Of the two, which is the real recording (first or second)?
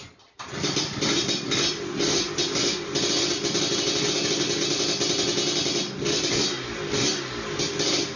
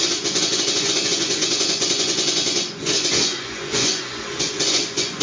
first